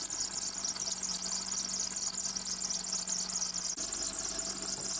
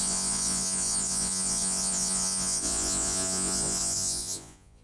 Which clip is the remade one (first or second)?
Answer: second